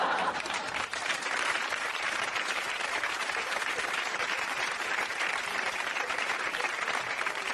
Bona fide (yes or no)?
no